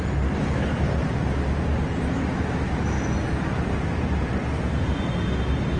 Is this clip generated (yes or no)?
no